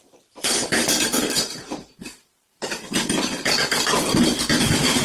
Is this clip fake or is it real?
fake